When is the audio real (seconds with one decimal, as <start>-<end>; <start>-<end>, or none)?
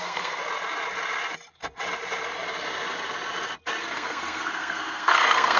0.4-3.8